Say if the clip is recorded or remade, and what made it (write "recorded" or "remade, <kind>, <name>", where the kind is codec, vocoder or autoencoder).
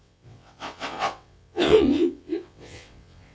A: remade, vocoder, WaveNeXt